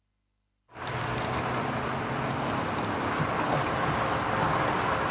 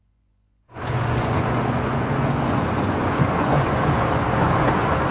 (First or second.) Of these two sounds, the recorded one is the first